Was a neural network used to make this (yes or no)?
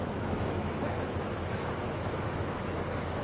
yes